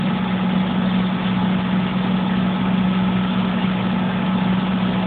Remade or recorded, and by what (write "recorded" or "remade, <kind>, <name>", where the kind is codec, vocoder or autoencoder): recorded